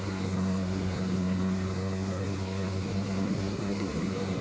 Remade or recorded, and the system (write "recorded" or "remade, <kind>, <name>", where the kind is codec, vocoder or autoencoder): remade, codec, SNAC